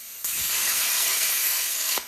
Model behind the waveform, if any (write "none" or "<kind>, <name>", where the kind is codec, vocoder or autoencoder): codec, SNAC